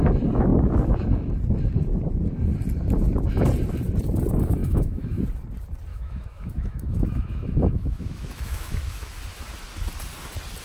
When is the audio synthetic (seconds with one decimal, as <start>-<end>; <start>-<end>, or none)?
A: 4.6-5.2; 5.9-9.2